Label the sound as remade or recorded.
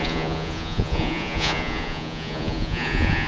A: remade